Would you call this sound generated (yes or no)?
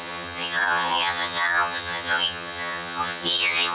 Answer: yes